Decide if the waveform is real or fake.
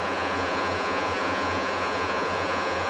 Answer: fake